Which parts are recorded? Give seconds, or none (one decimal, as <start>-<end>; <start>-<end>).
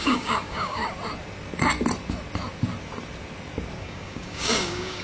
0.8-3.8